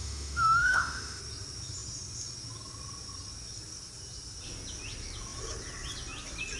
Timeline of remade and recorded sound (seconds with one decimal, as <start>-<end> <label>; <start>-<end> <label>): 0.0-1.2 remade; 1.2-6.6 recorded